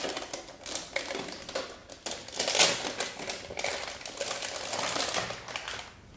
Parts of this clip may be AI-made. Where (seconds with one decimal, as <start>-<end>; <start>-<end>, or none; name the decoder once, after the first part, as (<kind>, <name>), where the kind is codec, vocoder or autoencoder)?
none